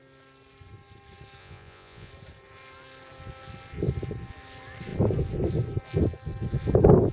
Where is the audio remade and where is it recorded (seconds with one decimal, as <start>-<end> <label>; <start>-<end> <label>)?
0.0-1.4 recorded; 1.4-2.1 remade; 2.1-7.1 recorded